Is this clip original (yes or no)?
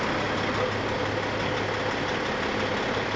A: yes